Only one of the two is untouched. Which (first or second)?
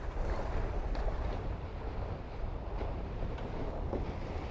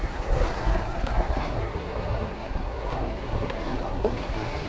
first